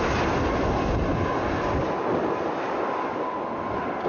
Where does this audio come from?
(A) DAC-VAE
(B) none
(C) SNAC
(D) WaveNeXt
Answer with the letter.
B